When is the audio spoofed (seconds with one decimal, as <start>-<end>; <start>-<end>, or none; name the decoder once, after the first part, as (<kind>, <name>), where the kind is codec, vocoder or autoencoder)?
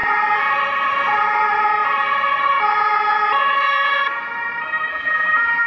4.9-5.7 (vocoder, BigVGAN v2)